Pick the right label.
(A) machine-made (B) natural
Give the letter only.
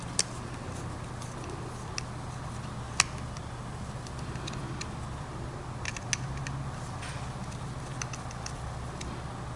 B